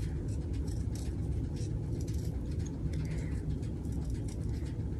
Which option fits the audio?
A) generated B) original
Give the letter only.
B